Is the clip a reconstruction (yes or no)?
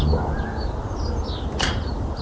no